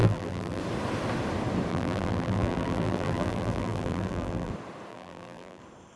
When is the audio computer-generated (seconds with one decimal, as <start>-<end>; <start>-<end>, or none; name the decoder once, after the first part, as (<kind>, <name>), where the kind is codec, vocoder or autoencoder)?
0.0-0.6 (vocoder, BigVGAN v2); 1.7-4.5; 4.9-5.6